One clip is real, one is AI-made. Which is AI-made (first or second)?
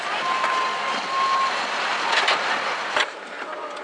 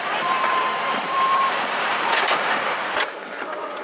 second